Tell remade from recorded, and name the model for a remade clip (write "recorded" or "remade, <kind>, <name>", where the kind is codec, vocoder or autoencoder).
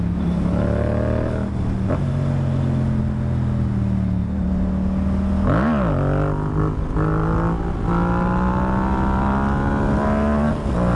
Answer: recorded